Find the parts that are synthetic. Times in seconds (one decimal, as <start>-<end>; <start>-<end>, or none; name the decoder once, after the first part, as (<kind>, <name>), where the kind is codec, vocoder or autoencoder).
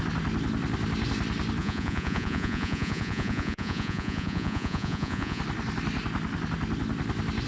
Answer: 1.6-5.4 (vocoder, Vocos)